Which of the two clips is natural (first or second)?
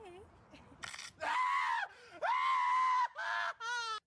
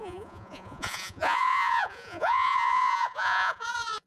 first